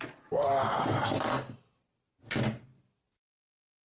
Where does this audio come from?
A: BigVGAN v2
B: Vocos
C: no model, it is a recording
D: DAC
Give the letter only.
C